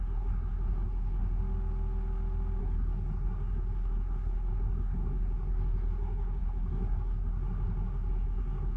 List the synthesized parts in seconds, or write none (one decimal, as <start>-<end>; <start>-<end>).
0.0-1.4; 2.6-8.8